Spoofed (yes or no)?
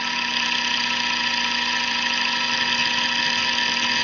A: no